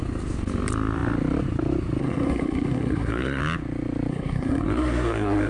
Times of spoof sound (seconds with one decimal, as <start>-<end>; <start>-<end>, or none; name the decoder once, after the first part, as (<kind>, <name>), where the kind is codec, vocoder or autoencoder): 2.0-3.4 (codec, SNAC); 4.1-5.5